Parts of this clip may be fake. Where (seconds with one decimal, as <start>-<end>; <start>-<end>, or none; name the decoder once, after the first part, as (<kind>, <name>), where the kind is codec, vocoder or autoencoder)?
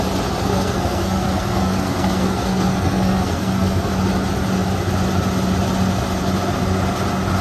0.4-3.9 (codec, SNAC)